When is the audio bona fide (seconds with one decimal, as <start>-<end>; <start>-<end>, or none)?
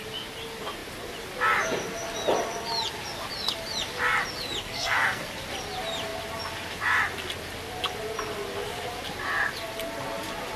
0.0-4.6; 5.3-10.6